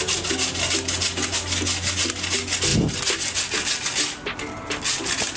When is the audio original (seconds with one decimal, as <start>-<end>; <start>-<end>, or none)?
0.0-5.4